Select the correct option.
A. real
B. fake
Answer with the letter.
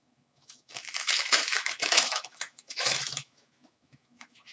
B